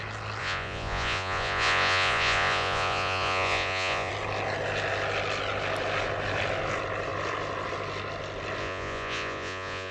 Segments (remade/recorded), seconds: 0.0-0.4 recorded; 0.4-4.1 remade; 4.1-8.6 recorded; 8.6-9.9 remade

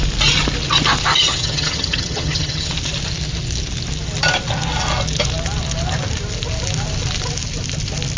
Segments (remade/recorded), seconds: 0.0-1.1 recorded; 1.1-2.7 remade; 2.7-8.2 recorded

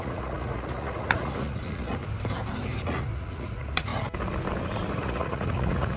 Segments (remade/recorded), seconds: 0.0-2.0 remade; 2.0-2.8 recorded; 2.8-3.9 remade; 3.9-4.9 recorded; 4.9-6.0 remade

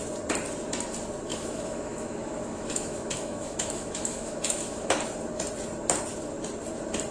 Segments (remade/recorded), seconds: 0.0-1.3 recorded; 1.3-4.9 remade; 4.9-7.1 recorded

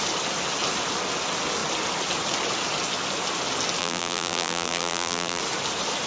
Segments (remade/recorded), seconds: 0.0-3.8 recorded; 3.8-5.4 remade; 5.4-6.1 recorded